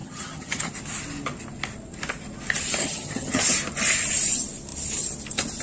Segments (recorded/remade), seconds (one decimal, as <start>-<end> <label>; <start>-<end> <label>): 0.0-0.7 remade; 0.7-2.8 recorded; 2.8-3.4 remade; 3.4-5.6 recorded